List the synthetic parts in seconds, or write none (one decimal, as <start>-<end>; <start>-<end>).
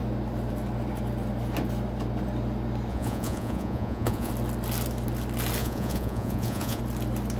2.9-4.3; 5.6-6.8